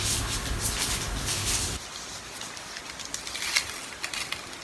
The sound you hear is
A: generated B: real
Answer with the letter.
B